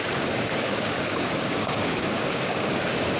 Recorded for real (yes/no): no